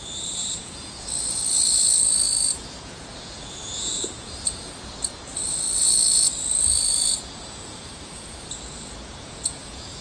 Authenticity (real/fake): fake